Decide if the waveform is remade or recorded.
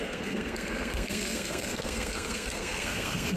remade